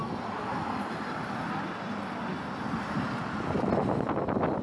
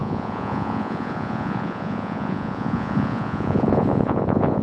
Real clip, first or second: first